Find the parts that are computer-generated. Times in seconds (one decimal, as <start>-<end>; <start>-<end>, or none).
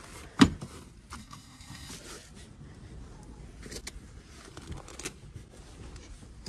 1.2-1.9